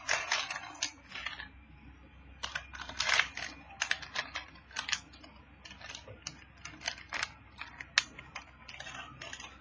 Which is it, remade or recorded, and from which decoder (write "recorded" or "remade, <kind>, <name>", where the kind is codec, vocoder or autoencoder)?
recorded